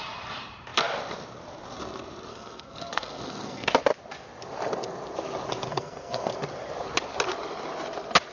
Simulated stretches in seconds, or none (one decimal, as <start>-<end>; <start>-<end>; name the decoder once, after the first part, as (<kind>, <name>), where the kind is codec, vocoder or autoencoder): 2.3-3.7 (codec, SNAC); 5.7-6.3